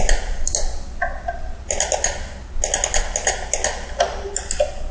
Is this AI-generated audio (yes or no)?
no